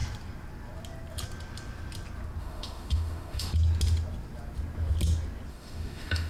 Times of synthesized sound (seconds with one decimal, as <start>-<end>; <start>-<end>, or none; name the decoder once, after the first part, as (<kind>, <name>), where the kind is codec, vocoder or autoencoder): 2.4-3.5 (autoencoder, DAC-VAE); 5.5-6.3